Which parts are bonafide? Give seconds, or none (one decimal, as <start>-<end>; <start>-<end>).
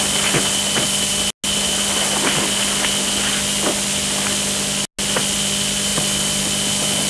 0.0-7.1